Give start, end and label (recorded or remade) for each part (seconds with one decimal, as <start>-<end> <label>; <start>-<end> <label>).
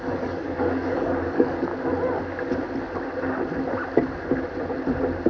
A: 0.0-1.7 remade; 1.7-5.3 recorded